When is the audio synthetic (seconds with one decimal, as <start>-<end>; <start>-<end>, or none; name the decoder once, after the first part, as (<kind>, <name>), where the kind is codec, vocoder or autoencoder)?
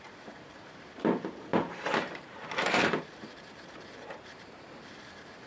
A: 0.0-5.5 (vocoder, BigVGAN v2)